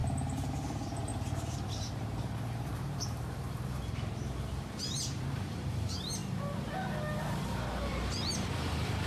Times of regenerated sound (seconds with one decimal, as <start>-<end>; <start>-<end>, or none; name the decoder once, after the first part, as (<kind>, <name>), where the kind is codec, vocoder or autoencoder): 0.0-6.2 (vocoder, BigVGAN v2); 7.2-9.1